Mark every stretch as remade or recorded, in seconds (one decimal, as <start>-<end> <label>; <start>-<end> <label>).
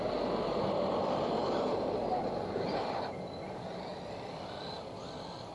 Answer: 0.0-5.5 recorded